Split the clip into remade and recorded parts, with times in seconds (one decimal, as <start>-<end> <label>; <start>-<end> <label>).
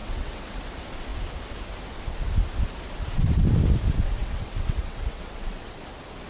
0.0-0.6 remade; 0.6-4.2 recorded; 4.2-5.8 remade; 5.8-6.3 recorded